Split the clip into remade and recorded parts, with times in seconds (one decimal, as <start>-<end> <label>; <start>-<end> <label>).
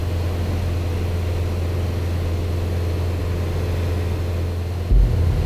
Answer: 0.0-5.5 recorded